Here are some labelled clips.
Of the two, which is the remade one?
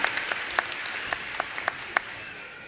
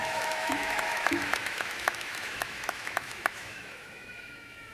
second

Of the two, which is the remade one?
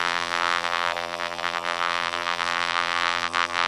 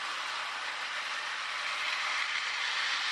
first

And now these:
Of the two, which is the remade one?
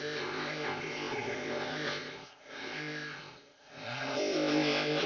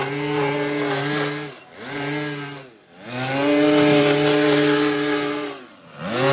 first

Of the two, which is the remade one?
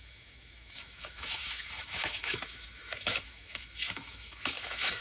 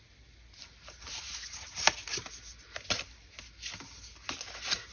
first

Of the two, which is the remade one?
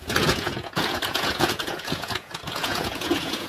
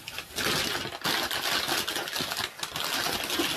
first